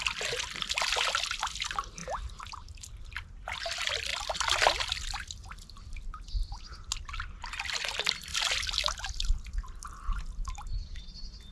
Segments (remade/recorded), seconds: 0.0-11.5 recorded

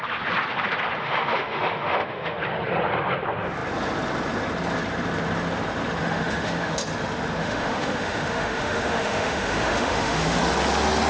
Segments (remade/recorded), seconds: 0.0-1.0 recorded; 1.0-2.4 remade; 2.4-6.0 recorded; 6.0-6.8 remade; 6.8-7.4 recorded; 7.4-10.4 remade; 10.4-11.1 recorded

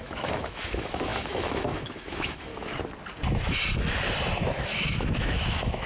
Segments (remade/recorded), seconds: 0.0-2.5 remade; 2.5-4.6 recorded; 4.6-5.9 remade

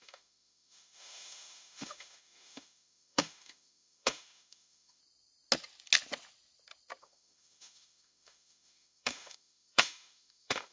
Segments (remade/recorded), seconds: 0.0-5.0 remade; 5.0-7.0 recorded; 7.0-10.7 remade

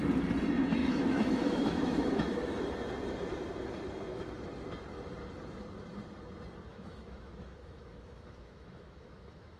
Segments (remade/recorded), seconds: 0.0-0.8 recorded; 0.8-2.6 remade; 2.6-6.7 recorded; 6.7-9.6 remade